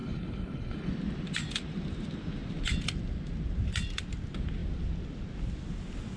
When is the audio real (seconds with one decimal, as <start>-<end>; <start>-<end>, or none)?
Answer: 0.9-6.2